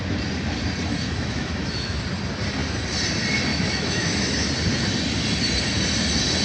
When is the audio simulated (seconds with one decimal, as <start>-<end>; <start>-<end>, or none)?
0.9-2.0; 3.5-4.5